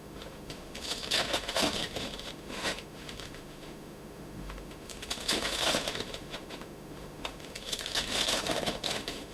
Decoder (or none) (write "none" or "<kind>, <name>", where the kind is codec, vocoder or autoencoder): autoencoder, DAC-VAE